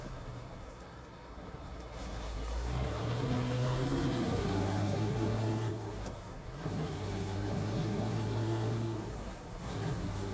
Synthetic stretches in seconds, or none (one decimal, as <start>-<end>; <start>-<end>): 0.0-10.3